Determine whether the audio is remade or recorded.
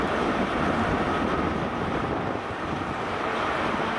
recorded